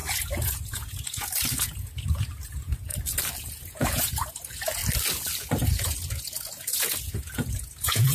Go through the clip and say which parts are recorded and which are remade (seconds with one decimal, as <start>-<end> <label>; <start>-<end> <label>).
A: 0.0-2.9 remade; 2.9-3.4 recorded; 3.4-4.8 remade; 4.8-5.4 recorded; 5.4-8.1 remade